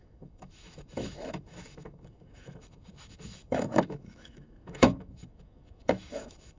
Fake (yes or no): yes